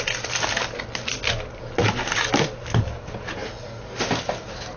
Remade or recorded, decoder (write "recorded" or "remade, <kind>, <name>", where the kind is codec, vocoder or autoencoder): recorded